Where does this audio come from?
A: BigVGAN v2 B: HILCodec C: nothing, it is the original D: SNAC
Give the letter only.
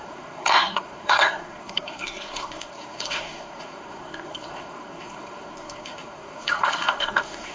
D